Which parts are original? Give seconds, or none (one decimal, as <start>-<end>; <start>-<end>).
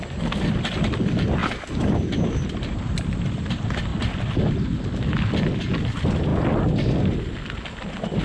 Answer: 0.0-1.4; 3.1-8.2